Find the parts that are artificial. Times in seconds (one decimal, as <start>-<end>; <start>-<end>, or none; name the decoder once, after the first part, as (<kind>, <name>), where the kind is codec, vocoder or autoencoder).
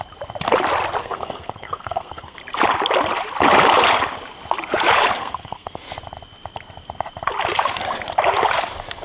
1.0-2.4 (codec, SNAC); 5.2-5.8